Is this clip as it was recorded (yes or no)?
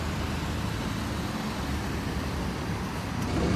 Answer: yes